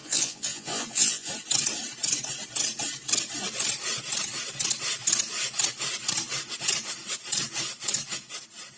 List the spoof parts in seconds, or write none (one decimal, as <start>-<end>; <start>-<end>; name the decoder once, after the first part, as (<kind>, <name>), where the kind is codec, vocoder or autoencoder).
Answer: 0.0-1.3 (vocoder, Vocos)